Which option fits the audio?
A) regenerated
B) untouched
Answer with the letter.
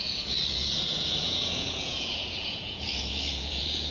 A